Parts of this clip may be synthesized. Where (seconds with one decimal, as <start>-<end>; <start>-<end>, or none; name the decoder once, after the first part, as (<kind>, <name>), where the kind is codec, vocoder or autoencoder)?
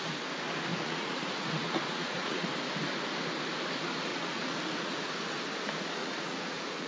0.7-2.5 (vocoder, Vocos); 4.1-5.1; 6.0-6.9